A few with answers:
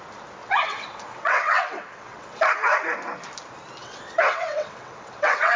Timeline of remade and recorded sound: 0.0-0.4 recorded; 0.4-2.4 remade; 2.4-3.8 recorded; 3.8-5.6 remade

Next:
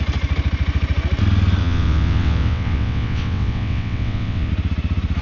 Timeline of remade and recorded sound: 0.0-1.6 recorded; 1.6-4.5 remade; 4.5-5.2 recorded

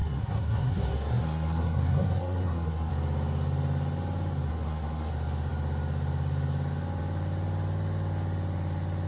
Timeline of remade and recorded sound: 0.0-2.9 remade; 2.9-4.5 recorded; 4.5-5.1 remade; 5.1-9.1 recorded

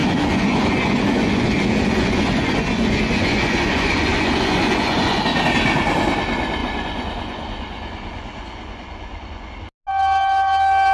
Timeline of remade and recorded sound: 0.0-5.2 remade; 5.2-6.6 recorded; 6.6-9.5 remade; 9.5-10.9 recorded

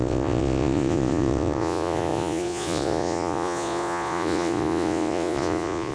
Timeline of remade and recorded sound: 0.0-5.9 remade

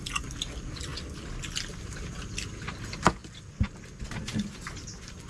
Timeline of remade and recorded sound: 0.0-5.3 recorded

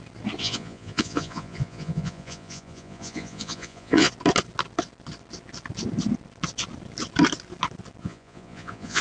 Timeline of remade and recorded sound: 0.0-0.4 recorded; 0.4-4.1 remade; 4.1-8.0 recorded; 8.0-9.0 remade

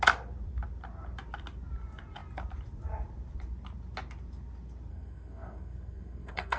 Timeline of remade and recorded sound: 0.0-4.9 recorded; 4.9-6.6 remade